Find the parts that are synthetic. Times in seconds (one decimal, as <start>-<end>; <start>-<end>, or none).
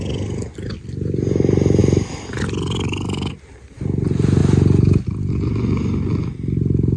none